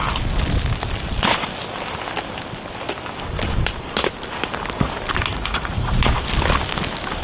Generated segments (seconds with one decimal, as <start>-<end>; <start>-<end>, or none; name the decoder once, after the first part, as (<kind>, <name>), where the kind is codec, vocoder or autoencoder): 5.3-6.0 (vocoder, Vocos)